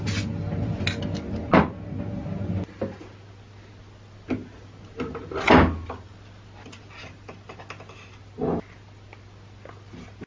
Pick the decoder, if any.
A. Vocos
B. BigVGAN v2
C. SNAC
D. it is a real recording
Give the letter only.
D